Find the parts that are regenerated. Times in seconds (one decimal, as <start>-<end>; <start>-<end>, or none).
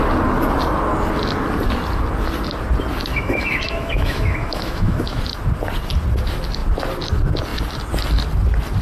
3.1-5.2